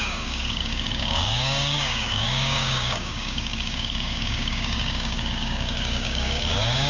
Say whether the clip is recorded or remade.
remade